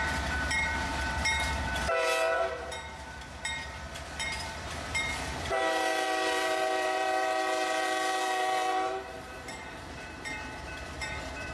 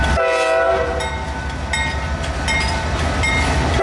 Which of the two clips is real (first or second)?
second